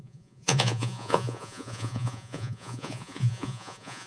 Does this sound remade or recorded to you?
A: remade